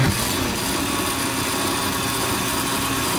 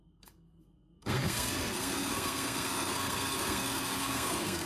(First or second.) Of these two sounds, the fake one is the second